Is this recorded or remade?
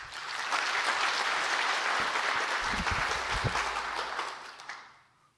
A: remade